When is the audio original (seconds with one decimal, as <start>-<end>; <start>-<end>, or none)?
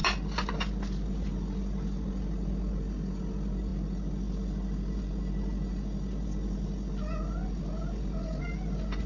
0.0-9.1